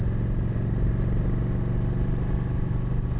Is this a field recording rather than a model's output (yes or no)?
yes